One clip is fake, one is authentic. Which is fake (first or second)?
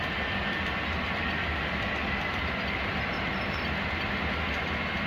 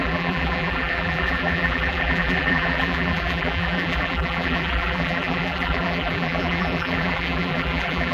second